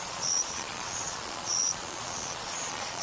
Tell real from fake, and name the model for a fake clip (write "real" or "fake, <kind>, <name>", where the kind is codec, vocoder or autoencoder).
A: fake, vocoder, Vocos